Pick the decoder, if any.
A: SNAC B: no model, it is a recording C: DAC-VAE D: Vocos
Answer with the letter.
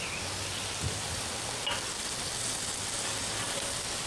B